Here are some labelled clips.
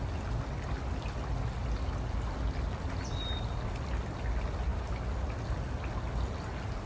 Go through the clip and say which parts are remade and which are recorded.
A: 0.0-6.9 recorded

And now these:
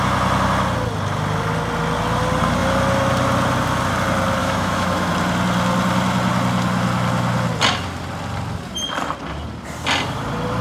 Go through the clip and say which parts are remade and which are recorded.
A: 0.0-4.4 recorded; 4.4-5.1 remade; 5.1-10.6 recorded

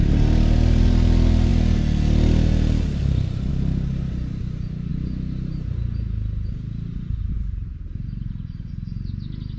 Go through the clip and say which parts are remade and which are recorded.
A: 0.0-9.6 recorded